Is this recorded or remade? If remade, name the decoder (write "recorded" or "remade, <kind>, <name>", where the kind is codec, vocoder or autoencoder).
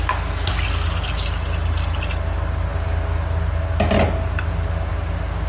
recorded